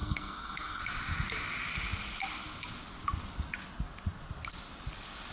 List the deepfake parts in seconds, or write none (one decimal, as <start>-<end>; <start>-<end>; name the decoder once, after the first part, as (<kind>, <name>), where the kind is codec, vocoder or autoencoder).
0.0-0.8 (codec, SNAC)